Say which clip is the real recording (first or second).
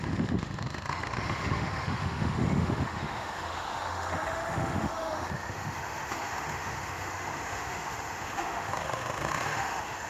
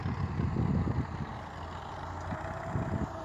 second